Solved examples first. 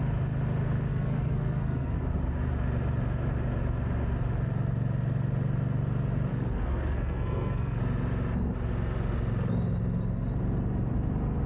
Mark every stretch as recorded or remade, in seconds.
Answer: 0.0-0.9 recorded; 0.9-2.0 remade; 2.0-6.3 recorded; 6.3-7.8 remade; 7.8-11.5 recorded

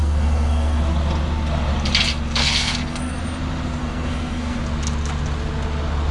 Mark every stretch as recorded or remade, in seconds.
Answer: 0.0-0.8 remade; 0.8-2.4 recorded; 2.4-3.2 remade; 3.2-3.8 recorded; 3.8-4.6 remade; 4.6-6.1 recorded

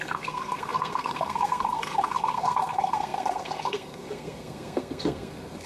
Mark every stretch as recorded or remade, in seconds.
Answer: 0.0-5.7 remade

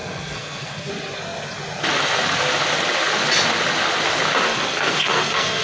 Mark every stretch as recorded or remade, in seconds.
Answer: 0.0-0.9 remade; 0.9-4.5 recorded; 4.5-5.6 remade

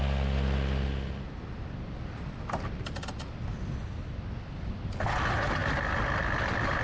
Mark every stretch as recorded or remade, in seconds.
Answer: 0.0-6.8 recorded

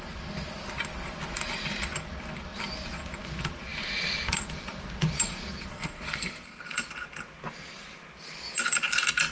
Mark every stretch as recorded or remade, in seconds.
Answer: 0.0-5.7 recorded; 5.7-6.6 remade; 6.6-9.3 recorded

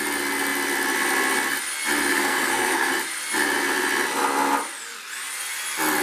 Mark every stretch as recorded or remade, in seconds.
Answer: 0.0-2.1 recorded; 2.1-2.9 remade; 2.9-6.0 recorded

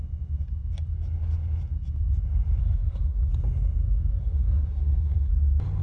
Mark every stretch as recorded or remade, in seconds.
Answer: 0.0-2.6 recorded; 2.6-3.3 remade; 3.3-4.2 recorded; 4.2-5.3 remade; 5.3-5.8 recorded